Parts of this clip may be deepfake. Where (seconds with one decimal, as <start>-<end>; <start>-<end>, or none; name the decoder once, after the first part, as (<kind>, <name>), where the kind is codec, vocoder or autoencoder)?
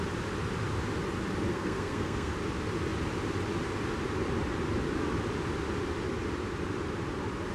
1.5-2.3 (codec, SNAC)